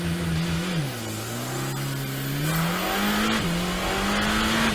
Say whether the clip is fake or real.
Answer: real